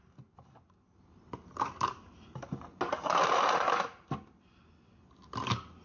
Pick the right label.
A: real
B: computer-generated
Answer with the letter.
A